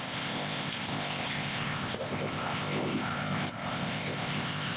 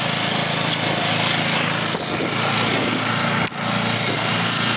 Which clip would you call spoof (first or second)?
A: first